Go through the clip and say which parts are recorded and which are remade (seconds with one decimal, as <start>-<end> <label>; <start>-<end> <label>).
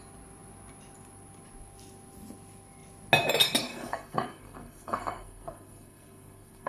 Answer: 0.0-3.7 recorded; 3.7-6.7 remade